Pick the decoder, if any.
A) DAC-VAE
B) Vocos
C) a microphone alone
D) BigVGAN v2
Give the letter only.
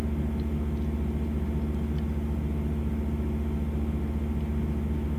C